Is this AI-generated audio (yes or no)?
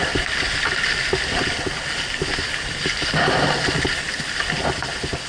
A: no